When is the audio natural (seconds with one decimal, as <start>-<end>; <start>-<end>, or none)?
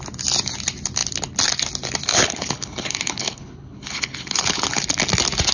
0.0-2.1; 4.8-5.5